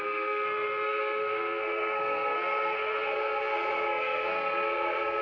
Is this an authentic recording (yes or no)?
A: no